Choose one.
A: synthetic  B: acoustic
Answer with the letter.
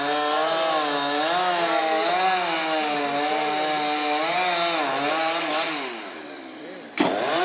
B